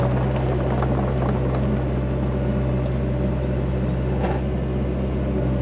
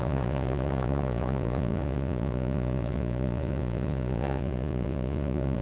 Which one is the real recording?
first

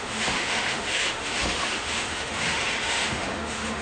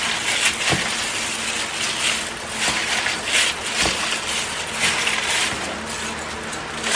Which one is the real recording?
second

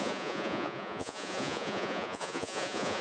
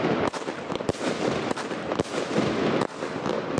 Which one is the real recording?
second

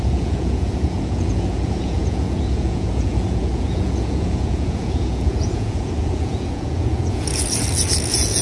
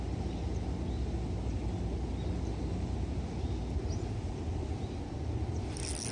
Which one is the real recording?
second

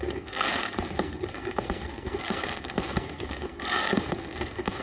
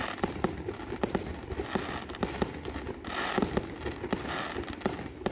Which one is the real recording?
second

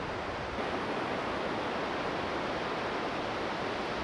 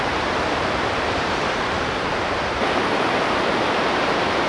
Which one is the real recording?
first